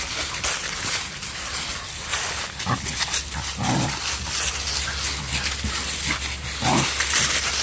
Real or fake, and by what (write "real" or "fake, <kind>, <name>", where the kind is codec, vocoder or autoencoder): real